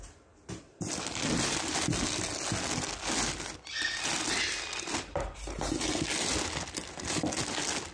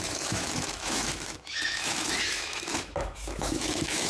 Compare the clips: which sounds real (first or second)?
first